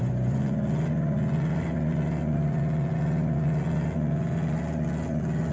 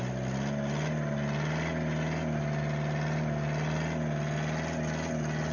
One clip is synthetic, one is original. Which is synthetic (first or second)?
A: first